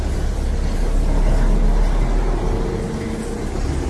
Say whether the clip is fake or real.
real